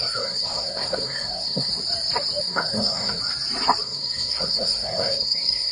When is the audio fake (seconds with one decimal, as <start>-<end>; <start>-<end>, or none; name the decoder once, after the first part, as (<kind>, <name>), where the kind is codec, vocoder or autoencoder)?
0.0-1.7 (codec, SNAC); 2.4-3.2; 3.8-5.7